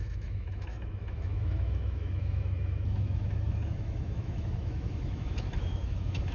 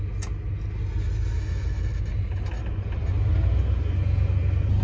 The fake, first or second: first